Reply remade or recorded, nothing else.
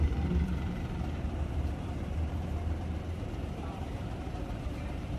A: remade